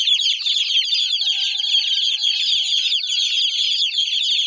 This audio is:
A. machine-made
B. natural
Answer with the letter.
B